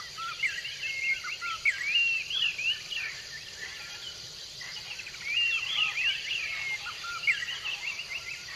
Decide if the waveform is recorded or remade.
recorded